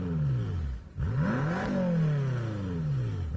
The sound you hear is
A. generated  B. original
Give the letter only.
B